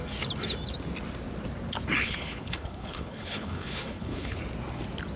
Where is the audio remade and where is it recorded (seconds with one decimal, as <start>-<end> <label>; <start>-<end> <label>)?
0.0-2.0 recorded; 2.0-4.4 remade; 4.4-5.2 recorded

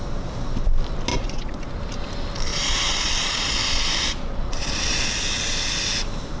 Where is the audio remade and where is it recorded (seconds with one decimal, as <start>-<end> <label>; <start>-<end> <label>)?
0.0-1.1 recorded; 1.1-1.7 remade; 1.7-2.5 recorded; 2.5-5.0 remade; 5.0-6.4 recorded